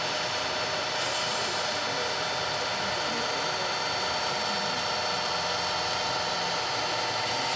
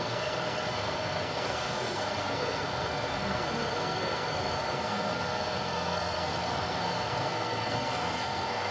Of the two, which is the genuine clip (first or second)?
first